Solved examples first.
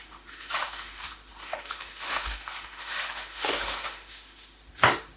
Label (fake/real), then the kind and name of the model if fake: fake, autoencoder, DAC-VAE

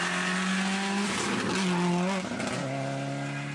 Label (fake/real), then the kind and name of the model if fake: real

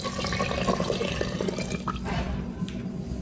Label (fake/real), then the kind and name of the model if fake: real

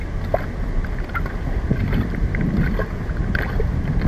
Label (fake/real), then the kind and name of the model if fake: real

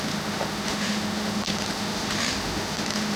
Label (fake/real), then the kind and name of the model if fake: fake, autoencoder, DAC-VAE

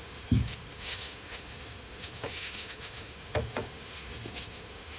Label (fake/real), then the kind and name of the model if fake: fake, autoencoder, DAC-VAE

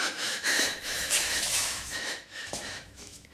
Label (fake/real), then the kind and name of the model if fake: fake, autoencoder, DAC-VAE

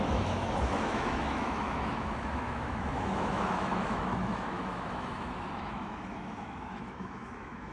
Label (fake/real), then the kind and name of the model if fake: fake, autoencoder, DAC-VAE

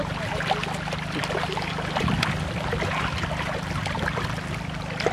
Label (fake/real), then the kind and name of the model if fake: real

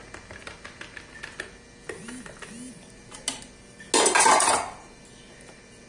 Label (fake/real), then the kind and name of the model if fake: real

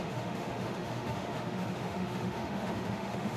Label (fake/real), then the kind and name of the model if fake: fake, autoencoder, DAC-VAE